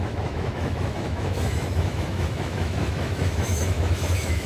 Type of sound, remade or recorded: remade